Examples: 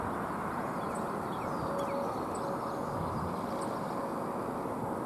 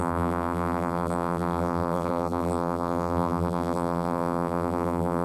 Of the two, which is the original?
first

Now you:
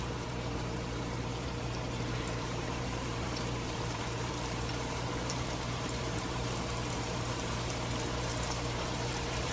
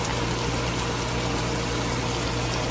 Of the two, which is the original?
second